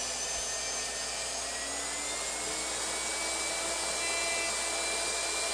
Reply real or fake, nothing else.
real